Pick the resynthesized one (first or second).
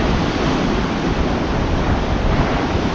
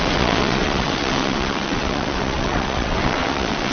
second